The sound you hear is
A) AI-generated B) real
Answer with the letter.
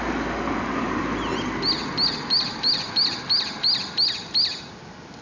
B